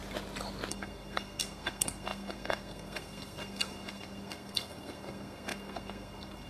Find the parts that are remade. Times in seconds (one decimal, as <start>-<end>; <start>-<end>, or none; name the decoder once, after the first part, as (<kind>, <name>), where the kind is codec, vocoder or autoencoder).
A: 0.7-6.5 (codec, SNAC)